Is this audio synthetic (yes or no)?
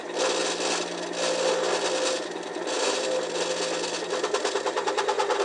no